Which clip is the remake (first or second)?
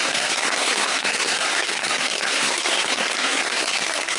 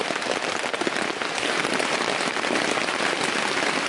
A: first